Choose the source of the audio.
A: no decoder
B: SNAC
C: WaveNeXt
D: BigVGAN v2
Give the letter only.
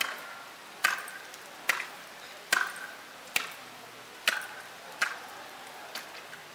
A